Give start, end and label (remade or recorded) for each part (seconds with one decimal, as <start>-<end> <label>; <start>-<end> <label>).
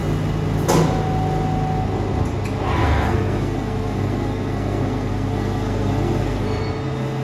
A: 0.0-2.8 recorded; 2.8-6.6 remade; 6.6-7.2 recorded